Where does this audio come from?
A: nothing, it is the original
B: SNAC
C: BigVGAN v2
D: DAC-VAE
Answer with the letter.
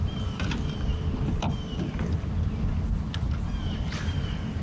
C